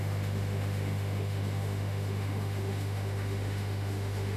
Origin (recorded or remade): remade